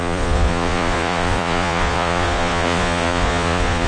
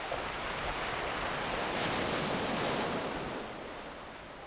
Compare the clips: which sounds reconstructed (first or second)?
first